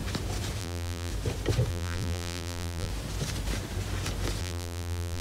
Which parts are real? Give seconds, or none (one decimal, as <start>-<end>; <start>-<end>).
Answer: 0.0-0.6; 1.1-1.7; 2.9-4.4